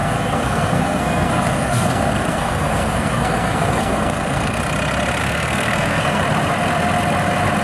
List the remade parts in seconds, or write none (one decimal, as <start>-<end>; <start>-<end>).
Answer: 0.0-4.6; 5.2-6.2